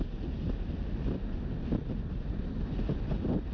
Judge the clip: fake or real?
real